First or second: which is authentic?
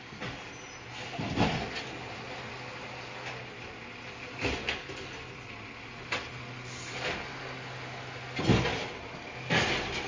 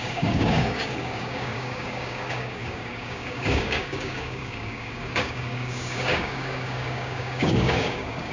first